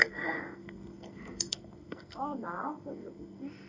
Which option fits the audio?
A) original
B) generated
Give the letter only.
B